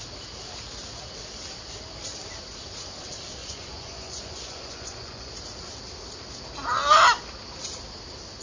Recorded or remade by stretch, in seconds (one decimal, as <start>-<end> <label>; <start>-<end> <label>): 0.0-3.4 recorded; 3.4-5.3 remade; 5.3-8.4 recorded